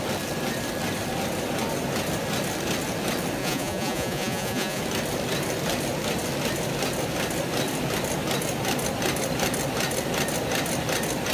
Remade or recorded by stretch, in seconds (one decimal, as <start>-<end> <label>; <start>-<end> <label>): 0.0-3.4 recorded; 3.4-4.8 remade; 4.8-11.3 recorded